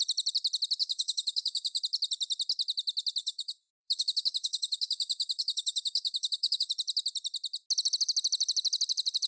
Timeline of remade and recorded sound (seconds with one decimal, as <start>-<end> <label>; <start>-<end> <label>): 0.0-0.8 recorded; 0.8-1.8 remade; 1.8-3.2 recorded; 3.2-6.7 remade; 6.7-9.3 recorded

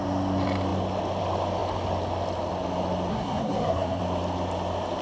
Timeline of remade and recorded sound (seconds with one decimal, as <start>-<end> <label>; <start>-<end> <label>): 0.0-3.1 recorded; 3.1-4.0 remade; 4.0-5.0 recorded

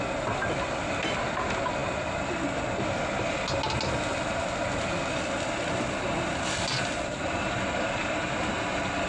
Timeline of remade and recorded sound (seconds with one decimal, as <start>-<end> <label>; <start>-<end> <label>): 0.0-9.1 recorded

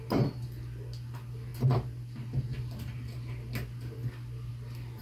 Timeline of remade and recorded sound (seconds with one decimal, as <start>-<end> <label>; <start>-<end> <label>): 0.0-5.0 recorded

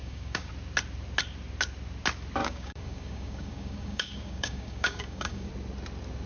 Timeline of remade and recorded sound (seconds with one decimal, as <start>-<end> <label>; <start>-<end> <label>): 0.0-0.5 remade; 0.5-2.4 recorded; 2.4-5.5 remade; 5.5-6.3 recorded

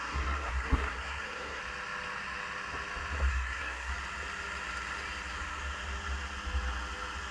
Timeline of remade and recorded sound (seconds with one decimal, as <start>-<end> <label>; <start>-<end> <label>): 0.0-1.6 remade; 1.6-3.3 recorded; 3.3-3.9 remade; 3.9-7.3 recorded

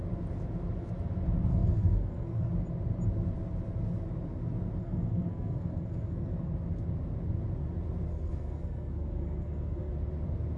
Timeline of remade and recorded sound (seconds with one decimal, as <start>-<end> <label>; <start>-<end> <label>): 0.0-1.5 recorded; 1.5-2.5 remade; 2.5-4.8 recorded; 4.8-6.5 remade; 6.5-8.1 recorded; 8.1-9.9 remade; 9.9-10.6 recorded

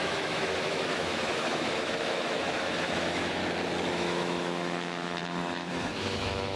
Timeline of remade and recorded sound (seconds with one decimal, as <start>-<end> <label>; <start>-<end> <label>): 0.0-3.4 remade; 3.4-3.9 recorded; 3.9-5.2 remade; 5.2-5.7 recorded; 5.7-6.6 remade